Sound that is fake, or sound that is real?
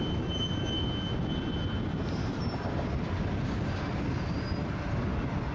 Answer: real